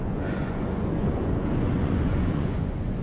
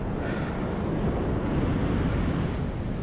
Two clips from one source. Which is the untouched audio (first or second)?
second